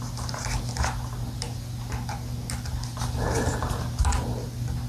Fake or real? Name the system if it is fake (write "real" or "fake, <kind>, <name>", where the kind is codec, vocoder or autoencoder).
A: real